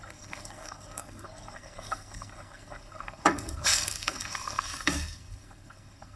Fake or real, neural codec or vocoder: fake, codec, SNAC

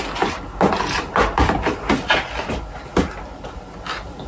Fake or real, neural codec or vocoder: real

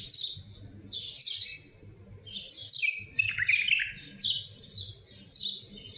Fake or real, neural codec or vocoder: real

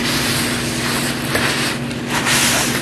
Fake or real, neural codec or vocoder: real